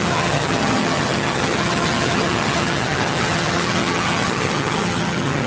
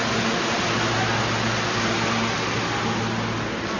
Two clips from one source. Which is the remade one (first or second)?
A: first